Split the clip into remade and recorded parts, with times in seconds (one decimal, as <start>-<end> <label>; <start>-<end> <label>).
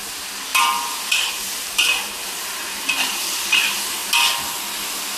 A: 0.0-0.5 recorded; 0.5-3.6 remade; 3.6-5.2 recorded